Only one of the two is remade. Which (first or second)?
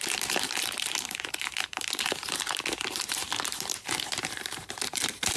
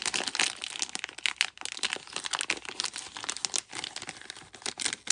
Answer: first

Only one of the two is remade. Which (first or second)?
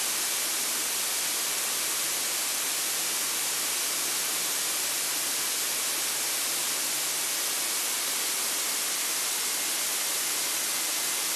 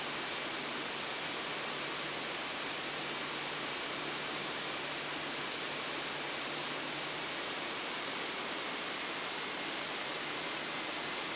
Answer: second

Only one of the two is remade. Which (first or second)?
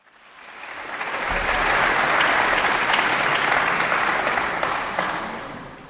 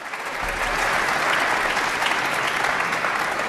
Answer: first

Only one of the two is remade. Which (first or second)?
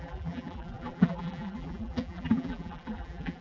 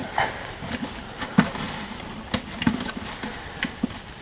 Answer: first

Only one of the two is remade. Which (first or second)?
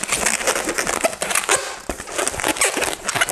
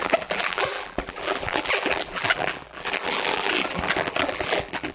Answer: second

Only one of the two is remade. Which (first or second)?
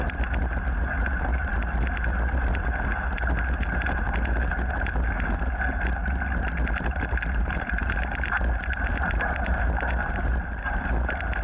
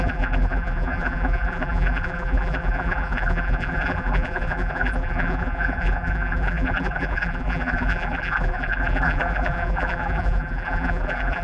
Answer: second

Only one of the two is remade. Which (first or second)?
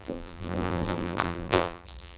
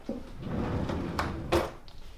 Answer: first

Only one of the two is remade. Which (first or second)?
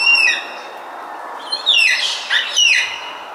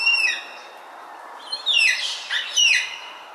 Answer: second